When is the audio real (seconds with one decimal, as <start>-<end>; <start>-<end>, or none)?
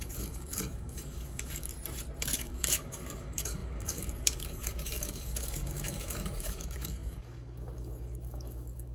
1.7-2.2